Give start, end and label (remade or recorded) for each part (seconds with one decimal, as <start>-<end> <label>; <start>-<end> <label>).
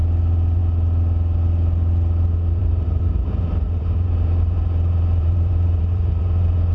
0.0-2.6 recorded; 2.6-6.7 remade